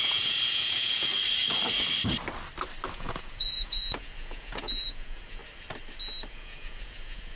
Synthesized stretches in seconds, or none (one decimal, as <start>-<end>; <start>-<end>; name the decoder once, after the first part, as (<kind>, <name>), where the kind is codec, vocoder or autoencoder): 0.0-1.1 (vocoder, Vocos); 2.9-5.4; 6.3-7.4